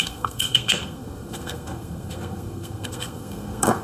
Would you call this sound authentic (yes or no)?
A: no